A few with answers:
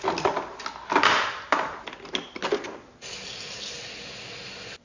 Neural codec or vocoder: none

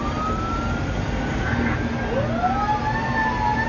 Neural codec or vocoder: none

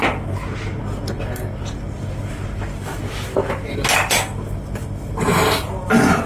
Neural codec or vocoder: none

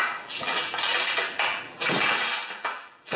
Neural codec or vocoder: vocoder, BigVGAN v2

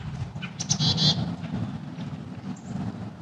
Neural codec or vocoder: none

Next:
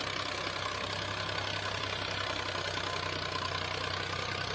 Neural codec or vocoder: none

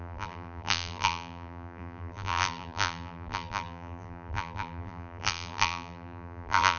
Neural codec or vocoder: vocoder, BigVGAN v2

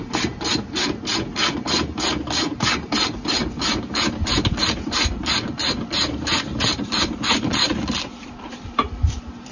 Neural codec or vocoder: vocoder, BigVGAN v2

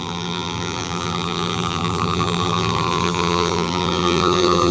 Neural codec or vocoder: vocoder, BigVGAN v2